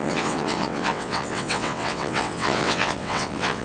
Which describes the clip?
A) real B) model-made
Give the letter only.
B